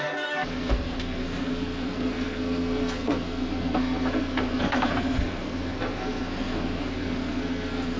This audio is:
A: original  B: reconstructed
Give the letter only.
B